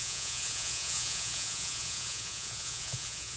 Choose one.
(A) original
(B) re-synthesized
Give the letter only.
B